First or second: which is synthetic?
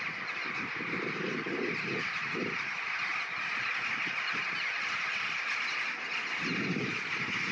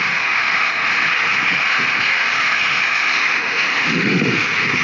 second